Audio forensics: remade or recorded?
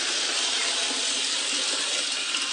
recorded